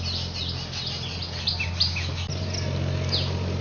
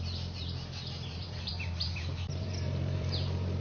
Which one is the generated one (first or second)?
second